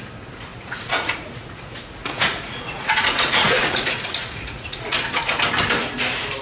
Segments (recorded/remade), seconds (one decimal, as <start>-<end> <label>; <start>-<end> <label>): 0.0-0.5 recorded; 0.5-1.6 remade; 1.6-2.0 recorded; 2.0-5.0 remade; 5.0-6.4 recorded